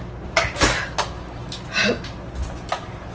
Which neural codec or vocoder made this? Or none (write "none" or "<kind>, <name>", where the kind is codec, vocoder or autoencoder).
none